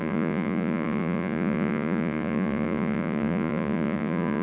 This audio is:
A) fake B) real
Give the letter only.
A